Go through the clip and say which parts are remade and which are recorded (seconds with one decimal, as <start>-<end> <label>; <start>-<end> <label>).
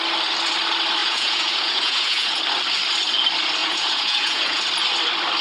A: 0.0-1.0 recorded; 1.0-2.4 remade; 2.4-3.6 recorded; 3.6-4.6 remade; 4.6-5.4 recorded